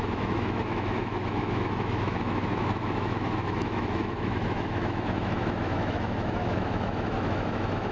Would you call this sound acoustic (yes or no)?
no